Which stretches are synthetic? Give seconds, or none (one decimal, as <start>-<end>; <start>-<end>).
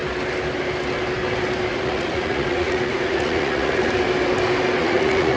1.7-3.9; 4.8-5.4